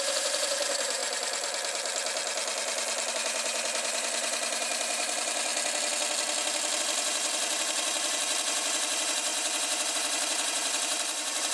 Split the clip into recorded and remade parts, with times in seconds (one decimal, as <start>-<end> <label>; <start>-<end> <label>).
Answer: 0.0-1.0 remade; 1.0-3.1 recorded; 3.1-5.5 remade; 5.5-6.8 recorded; 6.8-11.5 remade